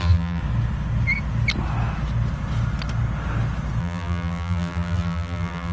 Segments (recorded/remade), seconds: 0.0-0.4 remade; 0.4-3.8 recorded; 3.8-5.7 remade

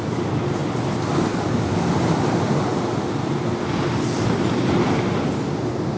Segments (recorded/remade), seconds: 0.0-6.0 recorded

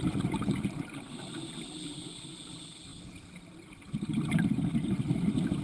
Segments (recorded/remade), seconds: 0.0-2.9 recorded; 2.9-5.0 remade; 5.0-5.6 recorded

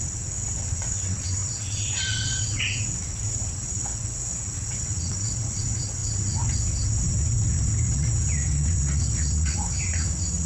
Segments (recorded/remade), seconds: 0.0-10.5 remade

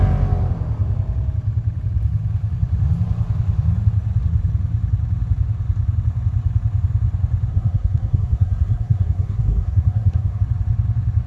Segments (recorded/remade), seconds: 0.0-7.5 recorded; 7.5-10.4 remade; 10.4-11.3 recorded